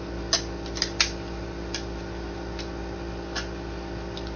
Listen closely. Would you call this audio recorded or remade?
recorded